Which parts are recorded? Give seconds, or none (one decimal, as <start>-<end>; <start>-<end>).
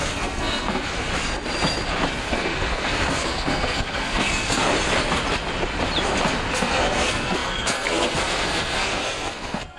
1.1-2.2; 4.7-6.5